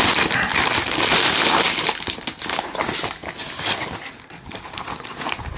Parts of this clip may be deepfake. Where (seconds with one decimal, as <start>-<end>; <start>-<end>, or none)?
none